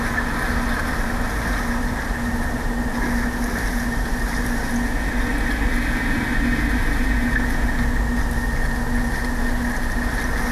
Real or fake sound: real